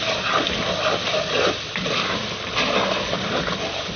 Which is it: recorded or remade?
recorded